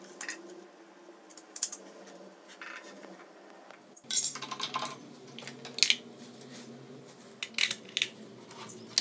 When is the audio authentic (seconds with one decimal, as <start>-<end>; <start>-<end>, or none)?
0.0-1.3; 4.8-9.0